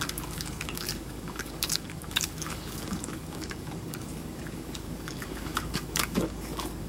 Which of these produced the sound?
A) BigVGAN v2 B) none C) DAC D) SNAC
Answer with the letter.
C